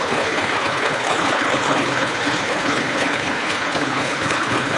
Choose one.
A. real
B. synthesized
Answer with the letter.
B